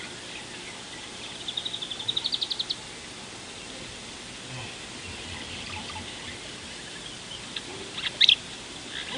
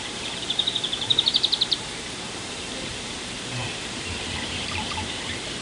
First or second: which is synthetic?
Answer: second